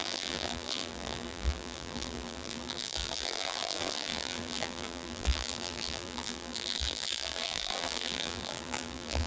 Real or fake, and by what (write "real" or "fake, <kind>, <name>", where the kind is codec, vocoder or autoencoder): fake, vocoder, BigVGAN v2